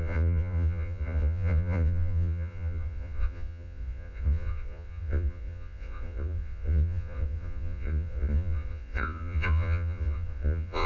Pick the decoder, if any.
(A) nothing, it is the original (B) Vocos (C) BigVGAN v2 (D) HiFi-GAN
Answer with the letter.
B